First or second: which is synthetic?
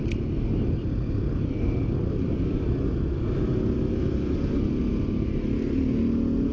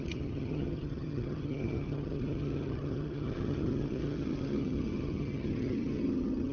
second